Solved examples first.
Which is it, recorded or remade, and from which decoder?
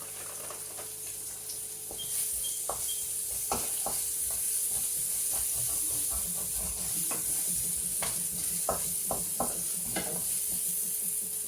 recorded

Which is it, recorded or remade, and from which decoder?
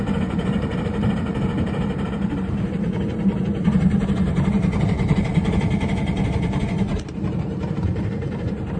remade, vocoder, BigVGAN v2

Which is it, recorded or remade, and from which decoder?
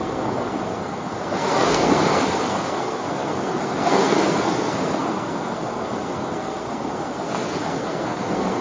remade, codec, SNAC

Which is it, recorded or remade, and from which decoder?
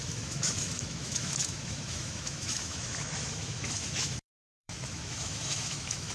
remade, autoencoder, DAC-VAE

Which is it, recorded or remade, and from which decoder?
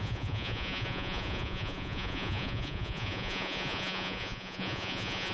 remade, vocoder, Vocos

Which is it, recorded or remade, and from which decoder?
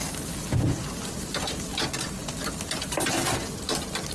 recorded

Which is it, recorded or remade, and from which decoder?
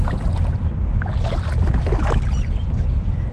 recorded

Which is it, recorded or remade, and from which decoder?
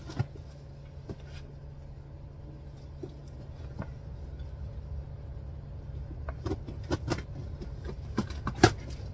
recorded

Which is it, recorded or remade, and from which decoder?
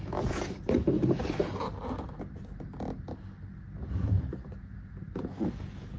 recorded